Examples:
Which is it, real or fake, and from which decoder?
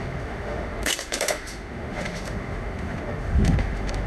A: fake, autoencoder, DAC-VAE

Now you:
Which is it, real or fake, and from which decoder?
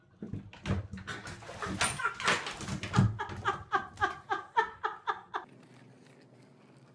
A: real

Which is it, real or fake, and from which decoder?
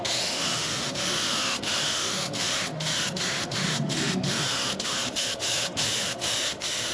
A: fake, autoencoder, DAC-VAE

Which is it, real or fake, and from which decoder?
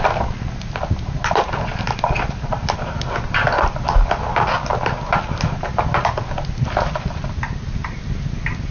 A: real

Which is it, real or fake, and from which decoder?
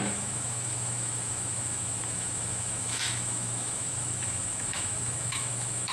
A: fake, autoencoder, DAC-VAE